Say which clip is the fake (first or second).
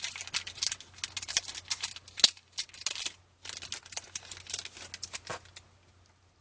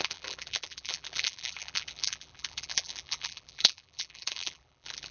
second